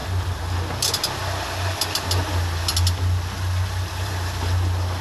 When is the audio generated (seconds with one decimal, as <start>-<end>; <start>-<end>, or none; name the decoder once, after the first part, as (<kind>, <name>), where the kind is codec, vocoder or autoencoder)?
none